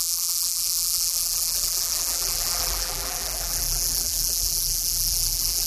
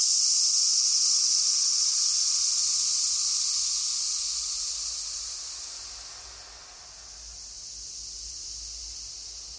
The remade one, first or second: first